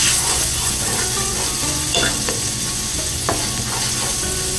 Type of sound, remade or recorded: remade